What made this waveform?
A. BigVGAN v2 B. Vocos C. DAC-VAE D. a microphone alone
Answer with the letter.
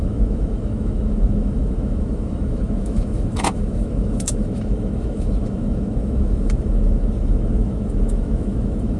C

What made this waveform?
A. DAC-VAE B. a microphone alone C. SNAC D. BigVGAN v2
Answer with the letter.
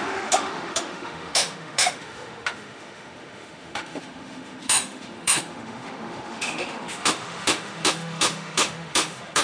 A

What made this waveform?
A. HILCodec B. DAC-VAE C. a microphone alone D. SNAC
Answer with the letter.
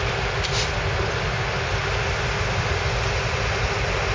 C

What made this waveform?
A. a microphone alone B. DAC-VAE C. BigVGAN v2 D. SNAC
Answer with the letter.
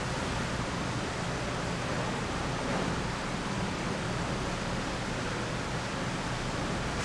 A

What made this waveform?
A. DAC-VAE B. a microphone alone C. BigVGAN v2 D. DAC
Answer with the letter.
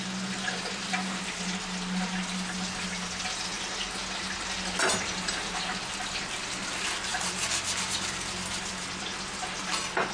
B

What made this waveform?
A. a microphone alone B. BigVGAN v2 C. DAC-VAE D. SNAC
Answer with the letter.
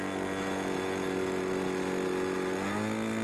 A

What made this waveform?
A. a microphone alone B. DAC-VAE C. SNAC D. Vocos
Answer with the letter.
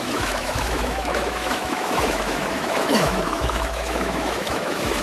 B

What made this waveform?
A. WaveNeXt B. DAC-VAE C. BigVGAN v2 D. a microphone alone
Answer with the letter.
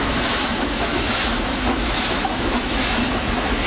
B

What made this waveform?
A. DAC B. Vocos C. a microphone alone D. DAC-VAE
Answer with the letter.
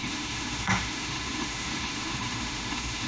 D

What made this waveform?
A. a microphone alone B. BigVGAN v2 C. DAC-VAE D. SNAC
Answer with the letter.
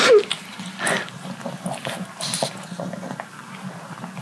A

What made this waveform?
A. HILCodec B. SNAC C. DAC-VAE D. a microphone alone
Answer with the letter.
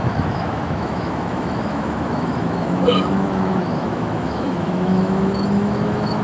C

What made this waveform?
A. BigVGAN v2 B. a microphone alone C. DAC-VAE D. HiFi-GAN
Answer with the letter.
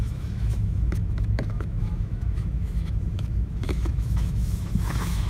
C